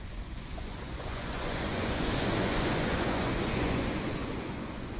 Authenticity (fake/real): fake